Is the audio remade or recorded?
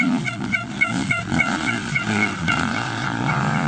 remade